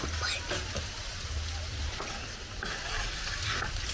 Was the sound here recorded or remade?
recorded